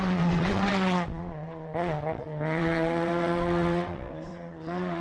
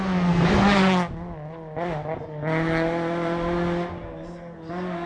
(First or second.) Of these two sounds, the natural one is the second